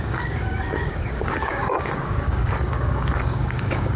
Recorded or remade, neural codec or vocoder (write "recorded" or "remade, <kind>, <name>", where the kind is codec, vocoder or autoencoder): remade, codec, DAC